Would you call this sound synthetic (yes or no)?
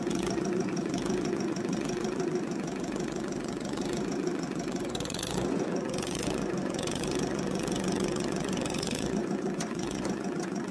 yes